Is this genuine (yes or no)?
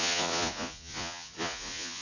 no